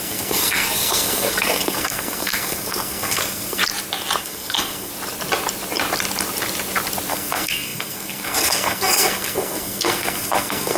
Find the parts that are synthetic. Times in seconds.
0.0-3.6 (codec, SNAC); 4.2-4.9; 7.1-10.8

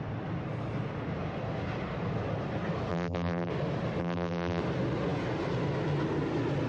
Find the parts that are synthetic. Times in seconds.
2.9-3.5 (vocoder, BigVGAN v2); 4.0-4.6